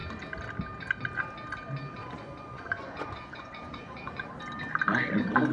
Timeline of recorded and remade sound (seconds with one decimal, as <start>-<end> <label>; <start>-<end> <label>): 0.0-2.0 recorded; 2.0-4.3 remade; 4.3-5.5 recorded